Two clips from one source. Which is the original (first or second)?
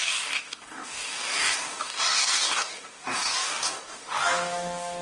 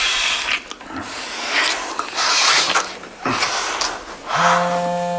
second